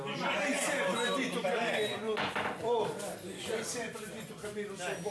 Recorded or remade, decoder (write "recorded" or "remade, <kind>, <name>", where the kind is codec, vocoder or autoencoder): remade, vocoder, BigVGAN v2